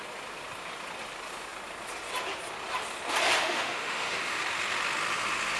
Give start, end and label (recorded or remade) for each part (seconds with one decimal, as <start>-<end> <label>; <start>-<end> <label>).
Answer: 0.0-3.4 recorded; 3.4-4.4 remade; 4.4-5.6 recorded